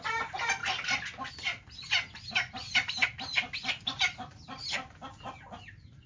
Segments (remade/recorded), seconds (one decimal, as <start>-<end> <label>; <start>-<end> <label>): 0.0-2.6 recorded; 2.6-6.1 remade